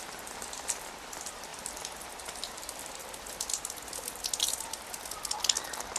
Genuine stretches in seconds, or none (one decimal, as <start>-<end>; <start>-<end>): 0.0-6.0